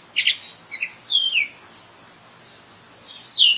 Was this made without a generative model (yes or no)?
yes